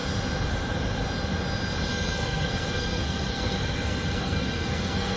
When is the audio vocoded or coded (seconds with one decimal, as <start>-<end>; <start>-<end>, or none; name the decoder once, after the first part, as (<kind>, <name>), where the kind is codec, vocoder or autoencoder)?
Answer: 1.9-5.2 (codec, SNAC)